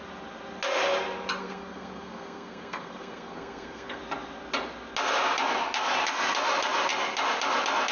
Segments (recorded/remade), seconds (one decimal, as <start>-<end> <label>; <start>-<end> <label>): 0.0-1.4 recorded; 1.4-4.0 remade; 4.0-7.9 recorded